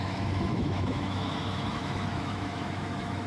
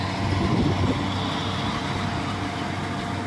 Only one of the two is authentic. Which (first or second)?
second